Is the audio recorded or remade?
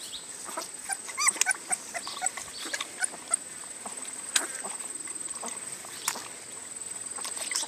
recorded